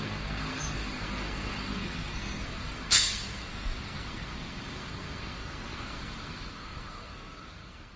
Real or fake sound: fake